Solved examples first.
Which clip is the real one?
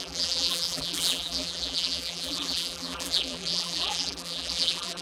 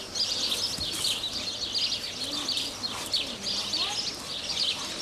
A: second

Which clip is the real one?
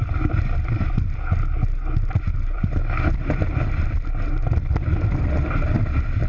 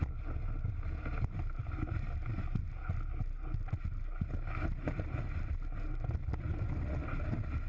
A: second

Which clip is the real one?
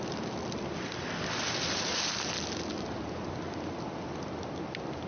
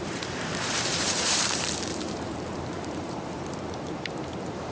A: first